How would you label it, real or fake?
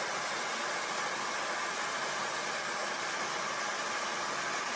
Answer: real